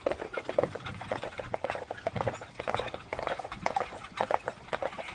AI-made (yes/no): yes